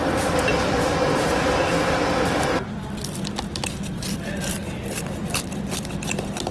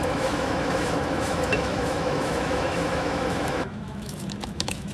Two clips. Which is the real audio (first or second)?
first